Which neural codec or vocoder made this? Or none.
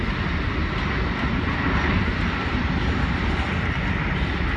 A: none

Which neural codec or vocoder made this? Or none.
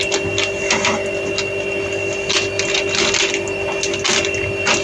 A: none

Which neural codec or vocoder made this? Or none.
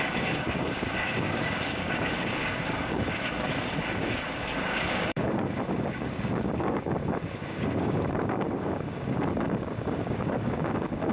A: codec, DAC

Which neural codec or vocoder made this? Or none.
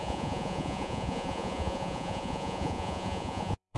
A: vocoder, Vocos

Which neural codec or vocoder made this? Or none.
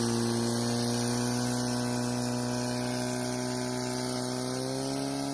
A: none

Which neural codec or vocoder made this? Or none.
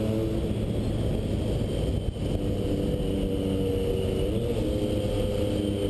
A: none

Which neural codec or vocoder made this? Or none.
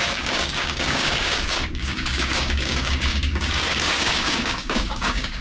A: codec, DAC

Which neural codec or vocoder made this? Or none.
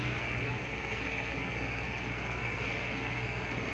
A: codec, SNAC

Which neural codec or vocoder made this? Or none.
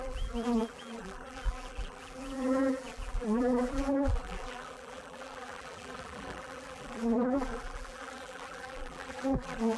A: vocoder, BigVGAN v2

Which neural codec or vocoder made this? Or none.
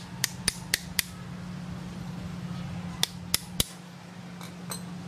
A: none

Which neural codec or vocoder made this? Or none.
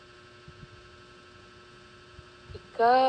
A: none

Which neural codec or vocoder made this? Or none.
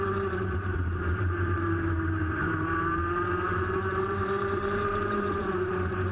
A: vocoder, BigVGAN v2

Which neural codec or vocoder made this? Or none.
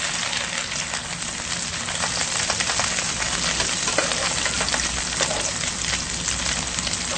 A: none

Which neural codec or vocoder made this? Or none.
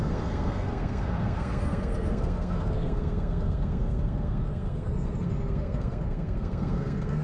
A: codec, SNAC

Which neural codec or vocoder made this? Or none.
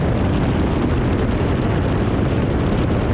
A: none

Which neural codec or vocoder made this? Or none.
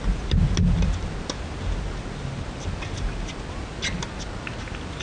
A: none